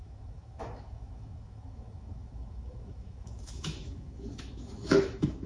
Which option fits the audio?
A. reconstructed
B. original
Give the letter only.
A